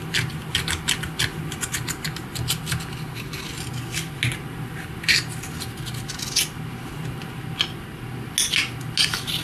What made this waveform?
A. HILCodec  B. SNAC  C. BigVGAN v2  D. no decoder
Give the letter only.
D